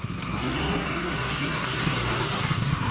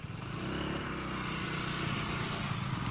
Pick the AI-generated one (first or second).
first